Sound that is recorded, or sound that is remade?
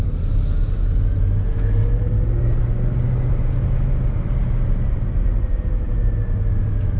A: recorded